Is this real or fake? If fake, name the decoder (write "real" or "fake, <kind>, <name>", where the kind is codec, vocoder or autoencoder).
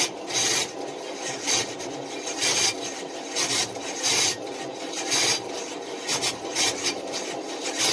real